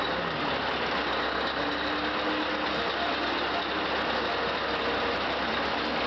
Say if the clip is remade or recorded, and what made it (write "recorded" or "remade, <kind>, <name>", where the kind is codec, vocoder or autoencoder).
recorded